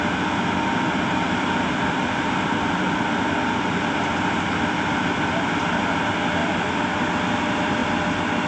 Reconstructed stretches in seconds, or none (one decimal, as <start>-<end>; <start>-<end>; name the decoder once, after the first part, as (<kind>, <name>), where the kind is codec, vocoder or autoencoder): 0.7-5.3 (vocoder, BigVGAN v2); 6.4-7.0